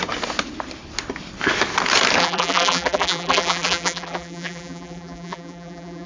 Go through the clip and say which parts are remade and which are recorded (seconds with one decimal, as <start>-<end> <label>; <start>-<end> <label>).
0.0-2.2 recorded; 2.2-6.1 remade